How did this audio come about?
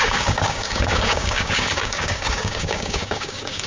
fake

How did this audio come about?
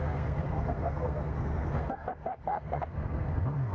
fake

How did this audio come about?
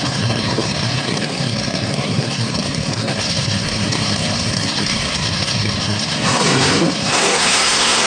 fake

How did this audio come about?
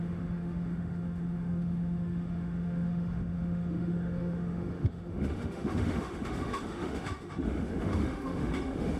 fake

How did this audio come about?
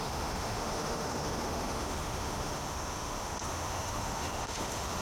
fake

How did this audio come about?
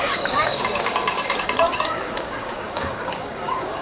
fake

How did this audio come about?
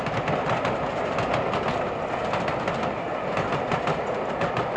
real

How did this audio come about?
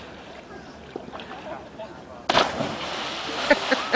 real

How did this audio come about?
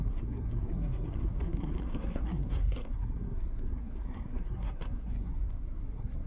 fake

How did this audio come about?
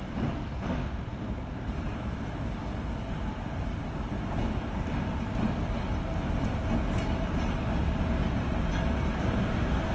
real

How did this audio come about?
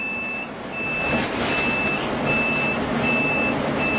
real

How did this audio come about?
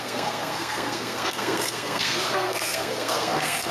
fake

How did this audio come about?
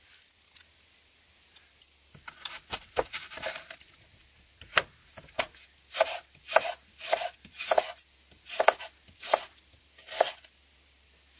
real